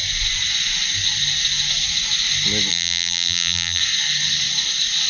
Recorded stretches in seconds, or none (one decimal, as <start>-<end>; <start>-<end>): 0.0-2.7; 3.8-5.1